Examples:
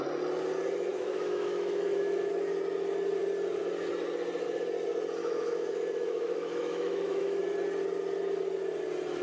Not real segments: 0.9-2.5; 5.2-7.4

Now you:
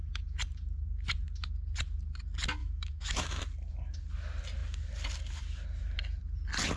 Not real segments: 2.6-3.4

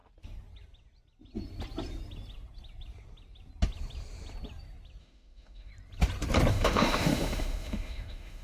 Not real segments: 5.0-5.7; 6.5-8.4

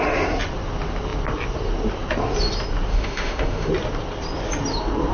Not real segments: 2.9-3.7